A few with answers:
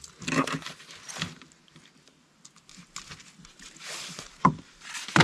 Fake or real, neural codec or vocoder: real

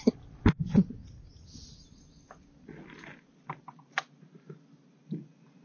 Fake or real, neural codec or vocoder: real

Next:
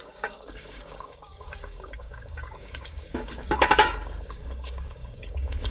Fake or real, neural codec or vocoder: fake, codec, DAC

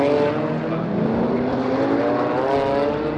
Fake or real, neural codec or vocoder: real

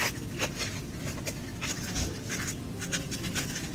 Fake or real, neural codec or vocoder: real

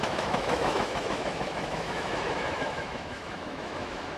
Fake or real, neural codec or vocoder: fake, autoencoder, DAC-VAE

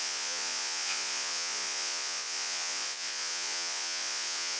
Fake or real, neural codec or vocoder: fake, vocoder, Vocos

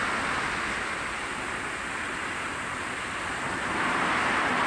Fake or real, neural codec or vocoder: real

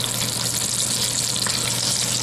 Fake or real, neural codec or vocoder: real